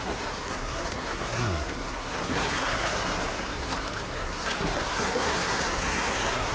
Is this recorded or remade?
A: remade